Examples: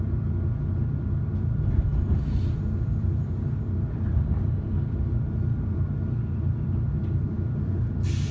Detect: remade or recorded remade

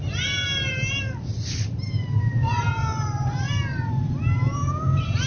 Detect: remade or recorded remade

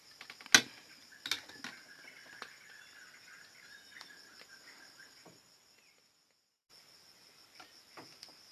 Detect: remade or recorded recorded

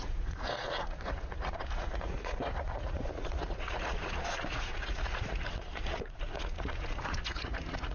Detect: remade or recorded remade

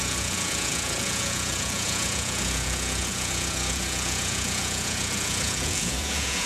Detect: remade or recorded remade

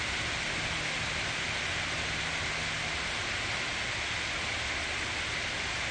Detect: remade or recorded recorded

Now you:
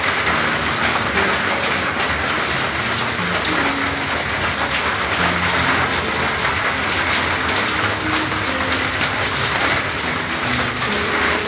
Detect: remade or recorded recorded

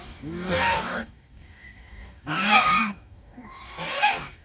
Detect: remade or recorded remade